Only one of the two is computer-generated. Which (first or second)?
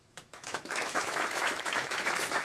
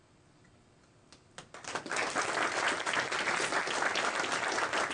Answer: first